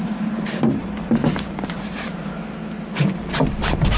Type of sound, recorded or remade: remade